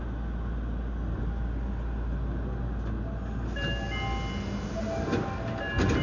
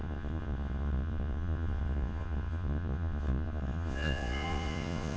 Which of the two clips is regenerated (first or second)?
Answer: second